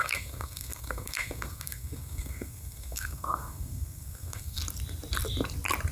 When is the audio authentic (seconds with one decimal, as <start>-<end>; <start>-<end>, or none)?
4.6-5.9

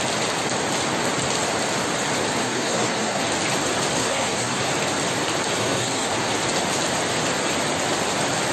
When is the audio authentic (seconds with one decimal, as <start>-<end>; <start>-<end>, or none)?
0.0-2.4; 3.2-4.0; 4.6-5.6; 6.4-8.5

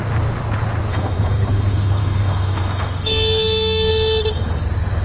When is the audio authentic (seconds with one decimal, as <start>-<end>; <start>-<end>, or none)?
0.0-0.9; 3.9-5.0

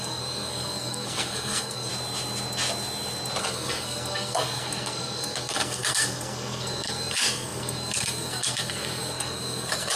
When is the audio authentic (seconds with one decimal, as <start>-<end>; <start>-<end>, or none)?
1.9-3.4